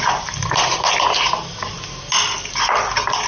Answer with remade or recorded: recorded